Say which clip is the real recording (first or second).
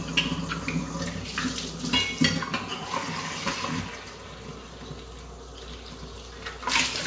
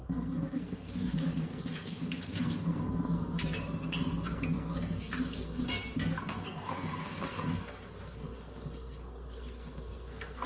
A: first